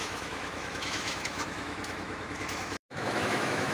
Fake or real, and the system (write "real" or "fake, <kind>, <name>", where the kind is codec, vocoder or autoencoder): fake, autoencoder, DAC-VAE